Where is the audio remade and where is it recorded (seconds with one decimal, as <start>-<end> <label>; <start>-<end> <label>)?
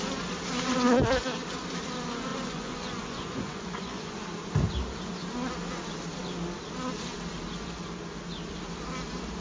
0.0-2.3 recorded; 2.3-4.2 remade; 4.2-9.4 recorded